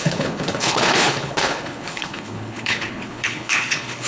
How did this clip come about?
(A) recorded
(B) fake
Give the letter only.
B